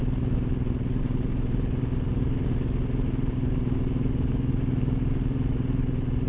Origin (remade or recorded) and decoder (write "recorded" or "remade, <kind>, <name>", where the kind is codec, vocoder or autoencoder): recorded